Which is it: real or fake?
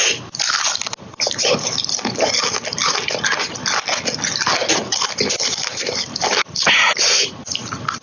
real